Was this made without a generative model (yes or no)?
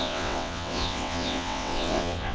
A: no